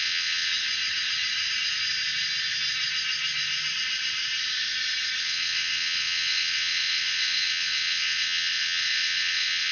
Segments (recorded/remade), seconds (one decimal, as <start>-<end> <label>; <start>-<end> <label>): 0.0-0.5 remade; 0.5-5.2 recorded; 5.2-9.7 remade